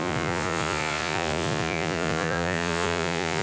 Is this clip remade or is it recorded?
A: remade